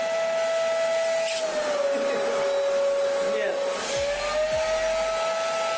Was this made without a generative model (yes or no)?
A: yes